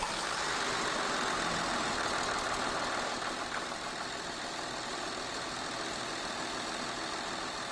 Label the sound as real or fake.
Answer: real